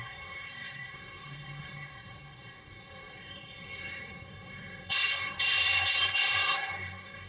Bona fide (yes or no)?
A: no